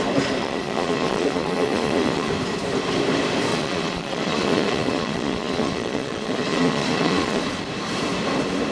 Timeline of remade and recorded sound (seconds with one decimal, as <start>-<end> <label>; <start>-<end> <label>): 0.0-0.4 recorded; 0.4-2.3 remade; 2.3-3.5 recorded; 3.5-7.4 remade; 7.4-8.7 recorded